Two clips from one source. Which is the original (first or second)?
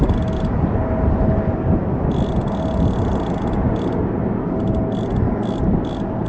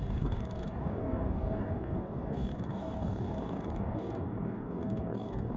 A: first